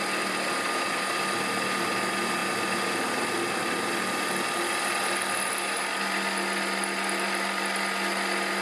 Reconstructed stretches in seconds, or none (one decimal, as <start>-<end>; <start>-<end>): none